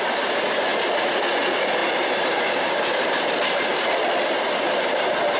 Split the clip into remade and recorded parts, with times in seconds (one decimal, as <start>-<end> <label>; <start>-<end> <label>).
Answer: 0.0-1.8 recorded; 1.8-5.0 remade; 5.0-5.4 recorded

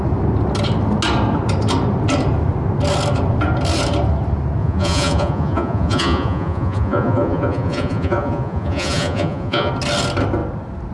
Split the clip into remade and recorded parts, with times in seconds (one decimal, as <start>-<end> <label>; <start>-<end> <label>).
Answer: 0.0-4.6 recorded; 4.6-9.7 remade; 9.7-10.9 recorded

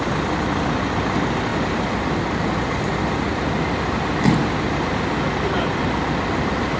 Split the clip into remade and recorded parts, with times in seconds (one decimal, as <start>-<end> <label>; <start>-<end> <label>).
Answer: 0.0-6.8 recorded

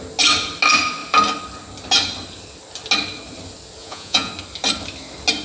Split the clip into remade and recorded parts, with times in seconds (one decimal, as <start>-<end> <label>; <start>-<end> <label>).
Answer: 0.0-3.8 recorded; 3.8-4.3 remade; 4.3-5.4 recorded

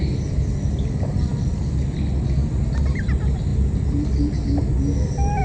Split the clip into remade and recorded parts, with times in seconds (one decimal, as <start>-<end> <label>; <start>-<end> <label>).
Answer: 0.0-5.4 recorded

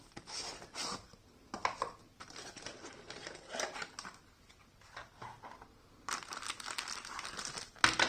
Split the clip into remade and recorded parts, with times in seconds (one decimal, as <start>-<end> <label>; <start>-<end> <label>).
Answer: 0.0-8.1 recorded